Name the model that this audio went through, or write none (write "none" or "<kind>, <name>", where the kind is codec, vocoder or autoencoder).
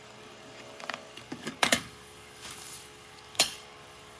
codec, DAC